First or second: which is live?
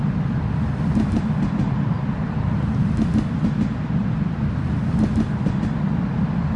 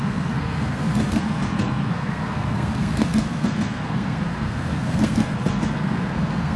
first